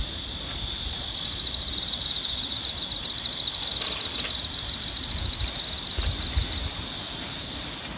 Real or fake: real